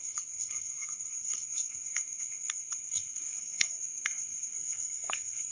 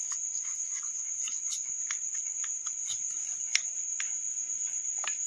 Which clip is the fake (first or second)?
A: first